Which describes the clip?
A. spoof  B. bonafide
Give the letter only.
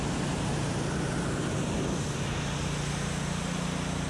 B